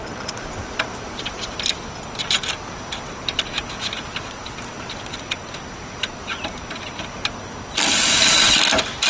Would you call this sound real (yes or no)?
yes